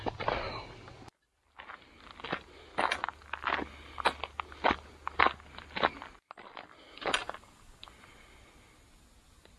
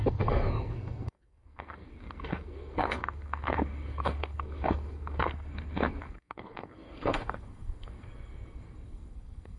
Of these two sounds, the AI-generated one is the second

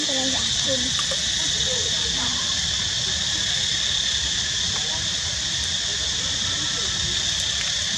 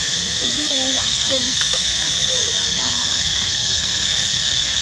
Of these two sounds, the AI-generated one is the second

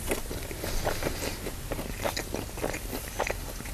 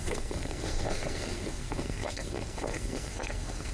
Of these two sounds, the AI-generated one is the second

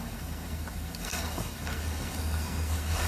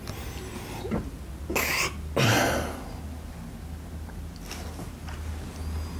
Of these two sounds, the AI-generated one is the first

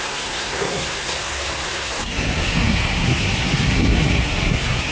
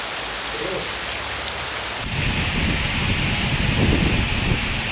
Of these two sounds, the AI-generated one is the first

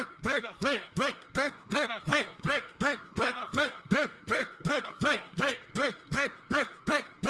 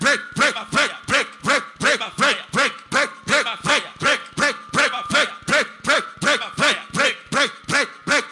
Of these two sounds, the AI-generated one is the first